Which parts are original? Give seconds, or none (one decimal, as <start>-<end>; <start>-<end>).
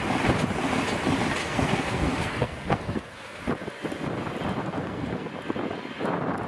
0.0-1.4; 3.4-4.6; 5.3-6.5